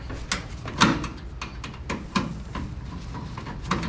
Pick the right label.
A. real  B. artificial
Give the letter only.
A